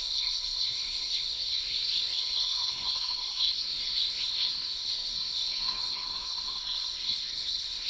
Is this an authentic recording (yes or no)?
no